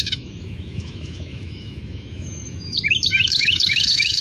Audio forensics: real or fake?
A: fake